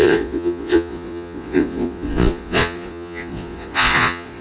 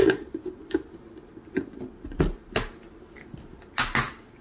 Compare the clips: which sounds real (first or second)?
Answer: second